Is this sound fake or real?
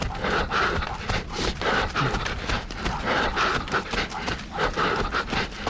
real